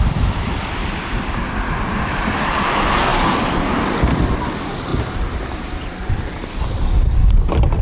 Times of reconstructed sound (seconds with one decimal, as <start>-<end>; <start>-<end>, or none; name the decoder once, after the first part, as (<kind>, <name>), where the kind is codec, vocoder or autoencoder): 0.0-7.8 (vocoder, BigVGAN v2)